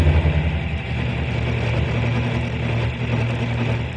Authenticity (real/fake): real